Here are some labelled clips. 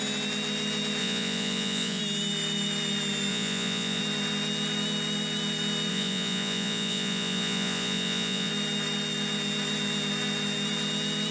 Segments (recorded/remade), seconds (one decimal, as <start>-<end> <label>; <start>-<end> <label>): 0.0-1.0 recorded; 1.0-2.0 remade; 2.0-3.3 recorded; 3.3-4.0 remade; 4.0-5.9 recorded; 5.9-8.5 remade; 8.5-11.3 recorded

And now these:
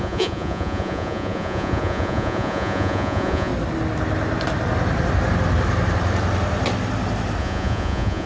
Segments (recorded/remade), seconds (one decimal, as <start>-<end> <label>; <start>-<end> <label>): 0.0-3.5 remade; 3.5-7.4 recorded; 7.4-8.3 remade

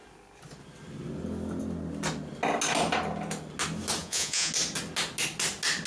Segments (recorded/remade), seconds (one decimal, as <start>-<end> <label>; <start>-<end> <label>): 0.0-4.0 recorded; 4.0-4.5 remade; 4.5-5.9 recorded

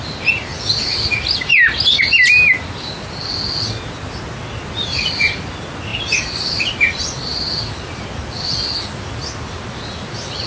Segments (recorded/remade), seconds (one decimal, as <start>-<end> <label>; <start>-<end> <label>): 0.0-10.5 recorded

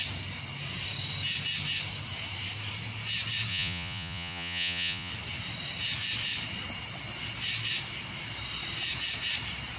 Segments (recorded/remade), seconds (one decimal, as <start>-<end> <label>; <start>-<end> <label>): 0.0-3.5 recorded; 3.5-5.1 remade; 5.1-9.8 recorded

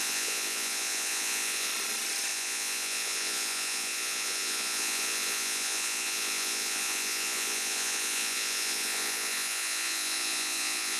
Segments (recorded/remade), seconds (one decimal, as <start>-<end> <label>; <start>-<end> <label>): 0.0-1.7 remade; 1.7-2.3 recorded; 2.3-11.0 remade

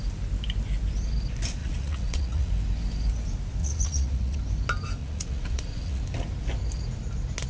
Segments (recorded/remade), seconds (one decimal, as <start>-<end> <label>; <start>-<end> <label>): 0.0-1.6 recorded; 1.6-2.5 remade; 2.5-3.6 recorded; 3.6-4.4 remade; 4.4-5.0 recorded; 5.0-6.0 remade; 6.0-7.5 recorded